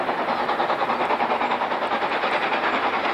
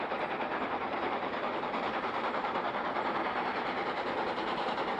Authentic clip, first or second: first